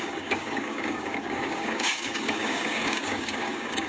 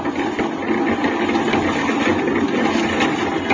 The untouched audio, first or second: second